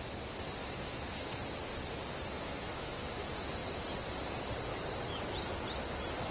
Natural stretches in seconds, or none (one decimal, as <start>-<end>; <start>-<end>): 0.0-0.6; 1.3-2.4; 3.1-6.3